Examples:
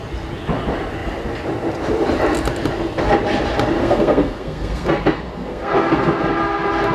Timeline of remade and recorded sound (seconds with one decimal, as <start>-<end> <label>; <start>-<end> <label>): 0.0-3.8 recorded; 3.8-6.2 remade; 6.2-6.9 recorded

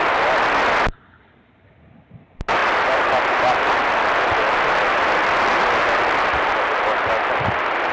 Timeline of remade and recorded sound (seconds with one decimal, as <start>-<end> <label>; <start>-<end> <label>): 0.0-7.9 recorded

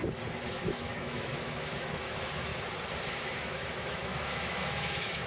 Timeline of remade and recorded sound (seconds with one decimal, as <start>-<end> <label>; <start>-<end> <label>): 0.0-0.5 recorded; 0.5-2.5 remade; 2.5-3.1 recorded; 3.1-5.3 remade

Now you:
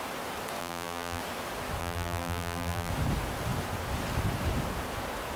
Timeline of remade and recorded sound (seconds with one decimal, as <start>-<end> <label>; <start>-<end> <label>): 0.0-0.6 recorded; 0.6-1.2 remade; 1.2-1.8 recorded; 1.8-2.9 remade; 2.9-5.4 recorded

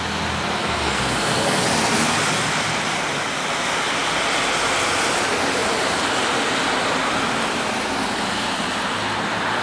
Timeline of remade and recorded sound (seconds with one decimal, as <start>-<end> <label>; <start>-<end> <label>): 0.0-0.6 recorded; 0.6-1.6 remade; 1.6-9.6 recorded